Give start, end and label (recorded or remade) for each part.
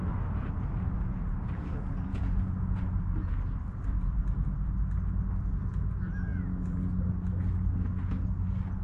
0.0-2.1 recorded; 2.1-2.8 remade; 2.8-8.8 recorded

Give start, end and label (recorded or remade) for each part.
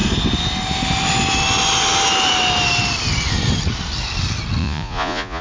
0.0-4.6 recorded; 4.6-5.4 remade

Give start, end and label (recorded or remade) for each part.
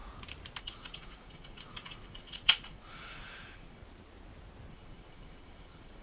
0.0-0.6 recorded; 0.6-3.8 remade; 3.8-4.7 recorded; 4.7-6.0 remade